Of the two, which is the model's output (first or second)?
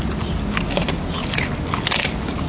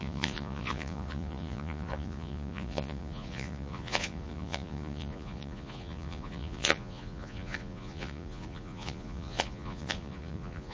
second